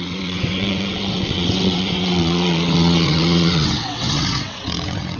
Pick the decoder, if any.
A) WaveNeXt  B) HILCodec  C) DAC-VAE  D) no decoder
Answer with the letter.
A